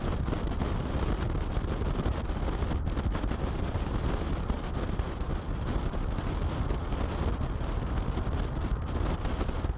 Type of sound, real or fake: real